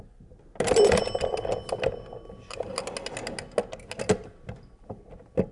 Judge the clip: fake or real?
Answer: real